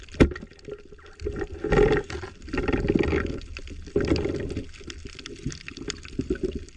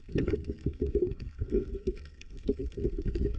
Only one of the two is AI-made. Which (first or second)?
second